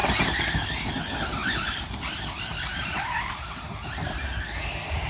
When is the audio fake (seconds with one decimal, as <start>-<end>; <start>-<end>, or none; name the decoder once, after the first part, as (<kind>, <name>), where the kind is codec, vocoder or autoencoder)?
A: 0.0-0.9 (vocoder, BigVGAN v2); 1.4-2.0; 2.7-5.1